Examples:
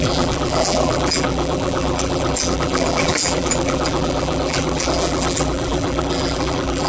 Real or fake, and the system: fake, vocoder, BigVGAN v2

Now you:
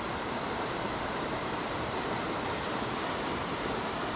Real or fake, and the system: fake, vocoder, BigVGAN v2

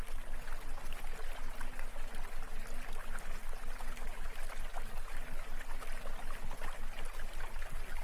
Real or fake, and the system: real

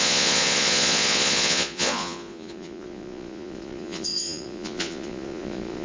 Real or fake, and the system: fake, vocoder, Vocos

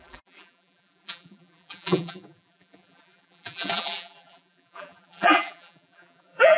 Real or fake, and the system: fake, vocoder, BigVGAN v2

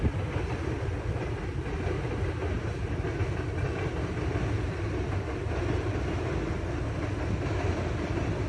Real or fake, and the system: real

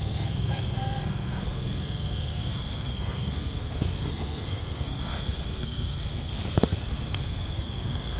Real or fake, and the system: fake, codec, SNAC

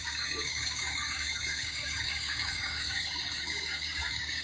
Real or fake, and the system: fake, codec, DAC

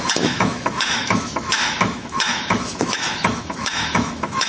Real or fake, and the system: fake, autoencoder, DAC-VAE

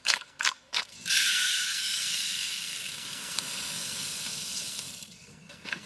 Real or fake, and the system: fake, codec, SNAC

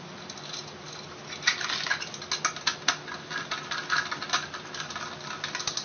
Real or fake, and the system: real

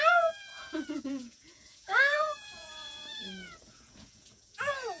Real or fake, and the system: fake, vocoder, Vocos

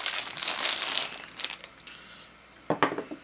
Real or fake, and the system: real